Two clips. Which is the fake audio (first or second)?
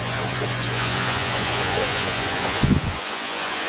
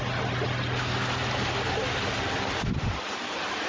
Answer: first